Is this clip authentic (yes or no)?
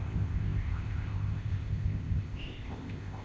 no